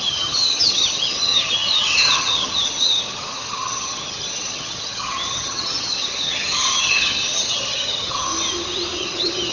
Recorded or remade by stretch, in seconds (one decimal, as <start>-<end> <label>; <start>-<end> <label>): 0.0-8.3 remade; 8.3-9.0 recorded; 9.0-9.5 remade